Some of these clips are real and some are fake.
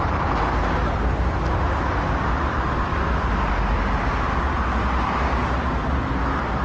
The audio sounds real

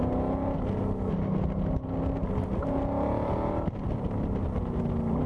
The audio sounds real